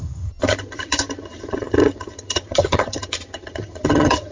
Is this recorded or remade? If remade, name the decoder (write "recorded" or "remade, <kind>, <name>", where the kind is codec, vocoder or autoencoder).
remade, vocoder, HiFi-GAN